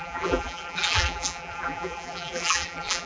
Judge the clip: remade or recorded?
remade